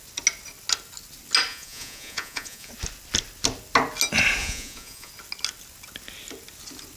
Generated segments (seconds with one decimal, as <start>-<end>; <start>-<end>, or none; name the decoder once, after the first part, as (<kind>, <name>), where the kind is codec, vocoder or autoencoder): 1.5-2.7 (vocoder, Vocos); 4.4-5.1